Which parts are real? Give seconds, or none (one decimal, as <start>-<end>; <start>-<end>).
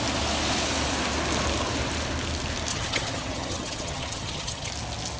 0.0-2.7; 4.7-5.2